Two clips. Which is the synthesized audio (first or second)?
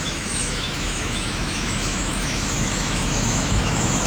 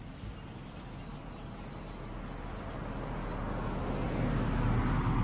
first